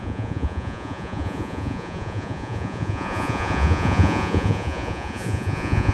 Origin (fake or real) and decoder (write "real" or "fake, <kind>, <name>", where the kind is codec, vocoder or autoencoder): fake, vocoder, Vocos